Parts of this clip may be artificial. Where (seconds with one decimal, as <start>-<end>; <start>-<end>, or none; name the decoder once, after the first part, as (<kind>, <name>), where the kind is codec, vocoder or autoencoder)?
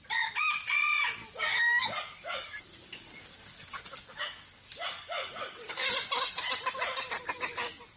1.5-5.9 (codec, DAC)